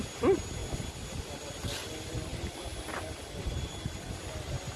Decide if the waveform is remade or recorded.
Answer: recorded